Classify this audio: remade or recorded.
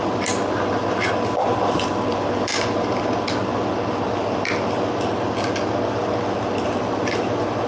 recorded